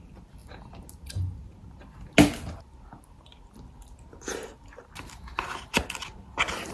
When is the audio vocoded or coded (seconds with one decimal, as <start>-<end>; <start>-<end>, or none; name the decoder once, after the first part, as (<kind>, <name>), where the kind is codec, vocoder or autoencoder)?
none